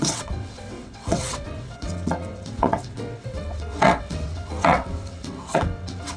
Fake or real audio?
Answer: fake